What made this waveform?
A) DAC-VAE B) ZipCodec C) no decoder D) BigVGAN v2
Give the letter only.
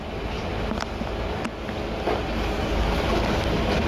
C